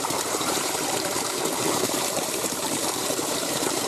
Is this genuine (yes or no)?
no